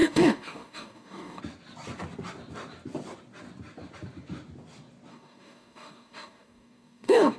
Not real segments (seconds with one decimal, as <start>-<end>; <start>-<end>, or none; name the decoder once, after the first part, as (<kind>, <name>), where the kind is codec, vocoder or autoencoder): 0.0-1.4 (codec, DAC); 5.1-7.4